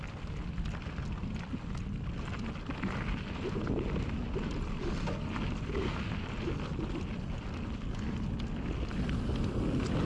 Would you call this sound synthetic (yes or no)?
no